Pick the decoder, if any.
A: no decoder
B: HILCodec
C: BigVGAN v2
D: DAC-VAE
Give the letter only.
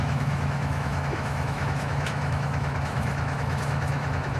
D